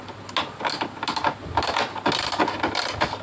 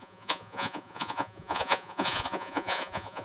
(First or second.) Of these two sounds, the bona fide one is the first